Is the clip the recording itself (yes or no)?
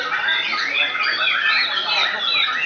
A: yes